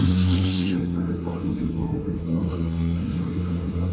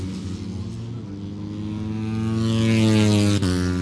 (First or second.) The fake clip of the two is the first